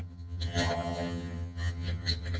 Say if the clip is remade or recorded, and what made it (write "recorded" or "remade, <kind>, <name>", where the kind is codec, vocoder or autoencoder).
remade, vocoder, HiFi-GAN